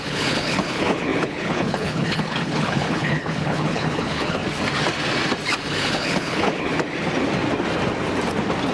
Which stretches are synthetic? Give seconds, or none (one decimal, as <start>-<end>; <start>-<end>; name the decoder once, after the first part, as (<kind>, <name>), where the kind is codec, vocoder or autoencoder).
0.0-4.4 (codec, HILCodec); 5.7-6.7